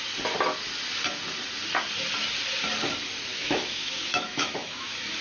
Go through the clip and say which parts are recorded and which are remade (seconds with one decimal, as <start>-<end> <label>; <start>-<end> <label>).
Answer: 0.0-3.3 recorded; 3.3-5.2 remade